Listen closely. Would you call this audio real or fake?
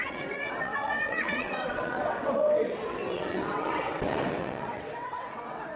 fake